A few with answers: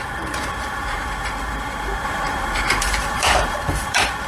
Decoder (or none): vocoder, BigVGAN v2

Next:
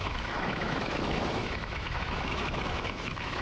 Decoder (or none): autoencoder, DAC-VAE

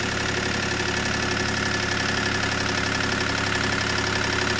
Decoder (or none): none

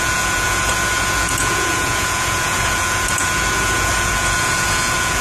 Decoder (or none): vocoder, Vocos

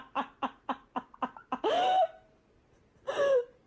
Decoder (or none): none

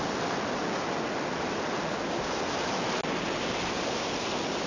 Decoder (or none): none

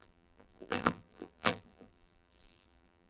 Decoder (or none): vocoder, BigVGAN v2